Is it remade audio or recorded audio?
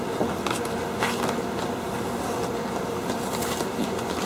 recorded